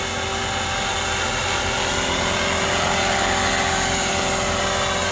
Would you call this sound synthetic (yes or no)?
no